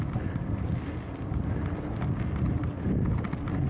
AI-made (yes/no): no